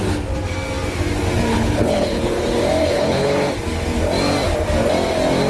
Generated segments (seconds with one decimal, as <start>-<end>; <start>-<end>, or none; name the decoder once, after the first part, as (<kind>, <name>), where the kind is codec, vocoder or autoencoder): 1.5-2.4 (codec, HILCodec); 2.8-3.5